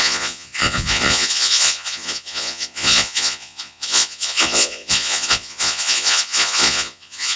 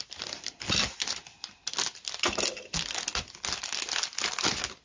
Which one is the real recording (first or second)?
second